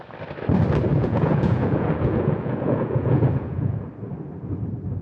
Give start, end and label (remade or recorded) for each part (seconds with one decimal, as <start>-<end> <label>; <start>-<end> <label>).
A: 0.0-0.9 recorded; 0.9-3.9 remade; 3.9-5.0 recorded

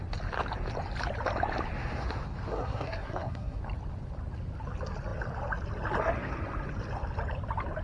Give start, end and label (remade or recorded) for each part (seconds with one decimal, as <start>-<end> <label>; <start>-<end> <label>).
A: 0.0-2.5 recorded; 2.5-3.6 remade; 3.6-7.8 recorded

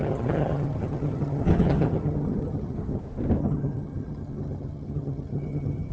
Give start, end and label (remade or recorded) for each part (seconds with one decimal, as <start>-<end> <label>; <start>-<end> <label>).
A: 0.0-3.0 remade; 3.0-3.4 recorded; 3.4-5.9 remade